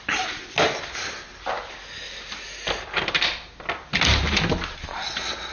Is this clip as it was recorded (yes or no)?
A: yes